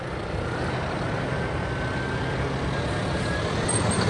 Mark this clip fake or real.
real